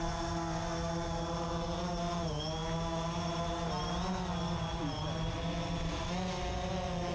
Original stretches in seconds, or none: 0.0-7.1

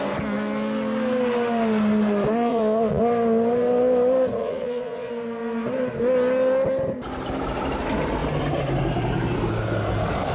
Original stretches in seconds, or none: 0.0-2.5; 3.0-4.4; 5.1-10.3

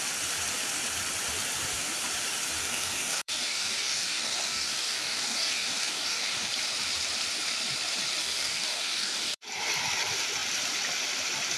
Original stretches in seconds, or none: 0.0-2.6; 6.5-8.2; 9.4-11.6